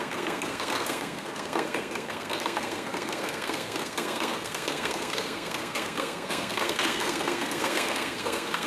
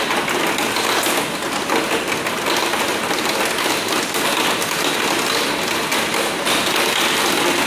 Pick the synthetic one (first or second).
first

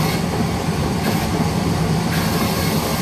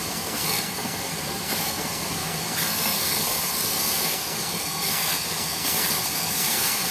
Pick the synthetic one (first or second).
second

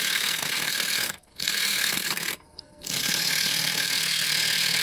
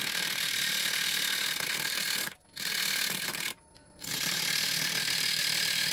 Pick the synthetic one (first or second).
first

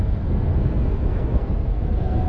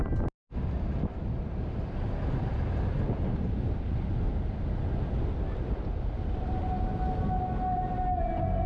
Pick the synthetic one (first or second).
first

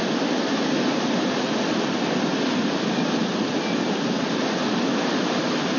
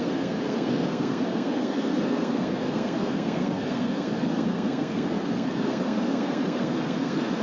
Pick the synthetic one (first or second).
second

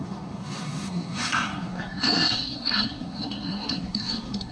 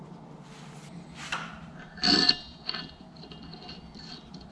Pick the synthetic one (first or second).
first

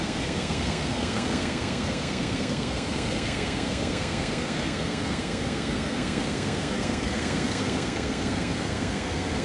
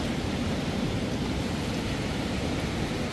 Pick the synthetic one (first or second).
first